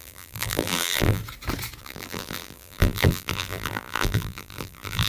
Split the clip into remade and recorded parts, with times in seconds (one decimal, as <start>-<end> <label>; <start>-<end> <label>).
0.0-1.2 remade; 1.2-1.8 recorded; 1.8-5.1 remade